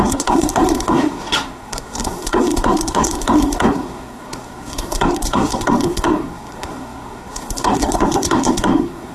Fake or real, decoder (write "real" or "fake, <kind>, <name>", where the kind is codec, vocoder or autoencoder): fake, codec, SNAC